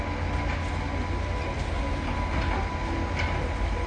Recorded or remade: recorded